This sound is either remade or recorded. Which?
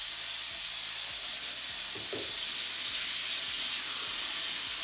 recorded